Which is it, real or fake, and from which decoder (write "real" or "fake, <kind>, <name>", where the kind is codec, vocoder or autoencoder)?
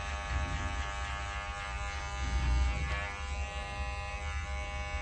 real